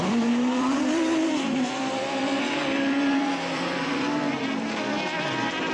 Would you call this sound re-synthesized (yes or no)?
yes